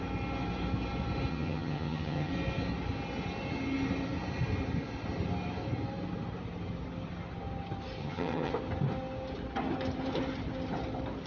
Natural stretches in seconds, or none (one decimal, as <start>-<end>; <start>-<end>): 0.0-1.3; 2.3-8.0; 8.5-11.3